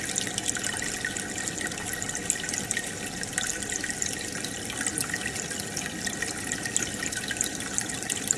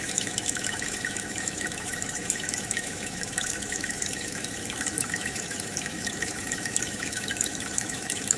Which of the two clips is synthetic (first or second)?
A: second